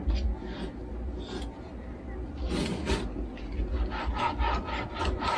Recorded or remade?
recorded